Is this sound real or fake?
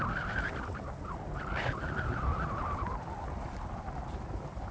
real